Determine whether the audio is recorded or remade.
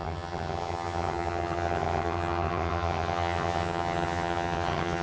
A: remade